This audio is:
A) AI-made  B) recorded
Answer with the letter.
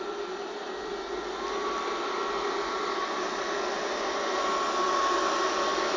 B